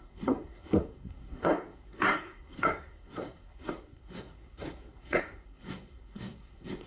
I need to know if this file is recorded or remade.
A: remade